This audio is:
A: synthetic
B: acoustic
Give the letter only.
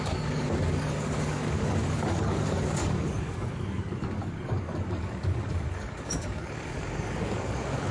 A